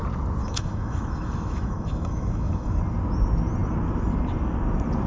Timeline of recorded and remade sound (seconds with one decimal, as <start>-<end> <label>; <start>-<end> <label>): 0.0-0.4 recorded; 0.4-2.8 remade; 2.8-5.1 recorded